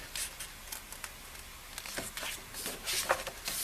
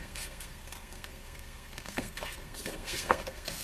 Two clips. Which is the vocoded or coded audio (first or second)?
second